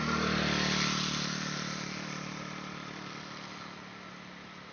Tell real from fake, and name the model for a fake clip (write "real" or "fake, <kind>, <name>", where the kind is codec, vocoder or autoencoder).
real